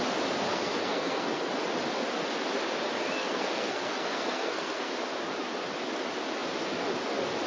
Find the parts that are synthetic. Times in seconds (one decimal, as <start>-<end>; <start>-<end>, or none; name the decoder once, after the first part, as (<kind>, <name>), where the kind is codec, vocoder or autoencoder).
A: 0.5-1.5 (codec, SNAC); 3.2-4.9